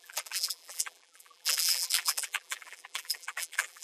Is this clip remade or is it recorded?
remade